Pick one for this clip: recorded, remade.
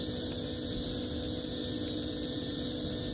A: recorded